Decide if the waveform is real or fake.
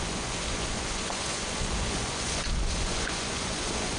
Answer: fake